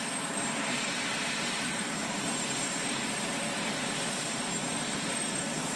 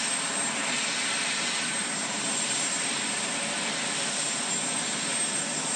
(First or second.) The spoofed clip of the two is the first